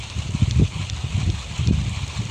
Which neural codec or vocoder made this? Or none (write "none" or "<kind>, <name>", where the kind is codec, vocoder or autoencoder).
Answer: none